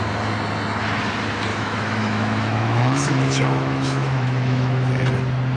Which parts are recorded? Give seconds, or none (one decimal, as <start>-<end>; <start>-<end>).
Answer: 0.0-1.5; 4.9-5.6